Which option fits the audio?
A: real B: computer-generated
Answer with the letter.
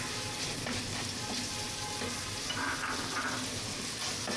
A